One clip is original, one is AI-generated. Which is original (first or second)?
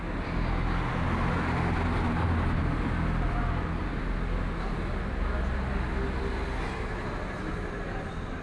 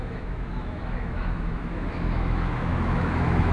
first